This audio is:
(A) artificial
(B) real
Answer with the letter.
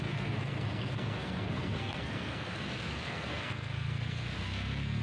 A